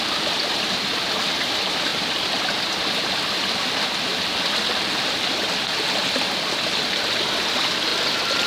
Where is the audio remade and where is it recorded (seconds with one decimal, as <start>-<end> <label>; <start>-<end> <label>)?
0.0-4.1 recorded; 4.1-5.5 remade; 5.5-7.9 recorded; 7.9-8.5 remade